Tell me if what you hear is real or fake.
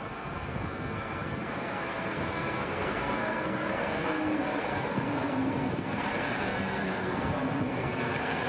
fake